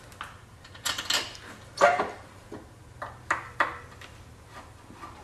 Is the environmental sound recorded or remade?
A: recorded